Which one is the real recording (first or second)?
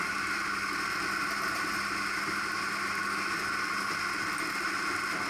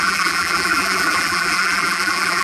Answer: first